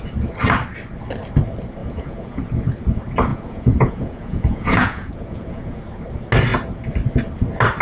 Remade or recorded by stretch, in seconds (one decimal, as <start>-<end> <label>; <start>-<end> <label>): 0.0-1.8 recorded; 1.8-2.4 remade; 2.4-3.3 recorded; 3.3-5.8 remade; 5.8-7.8 recorded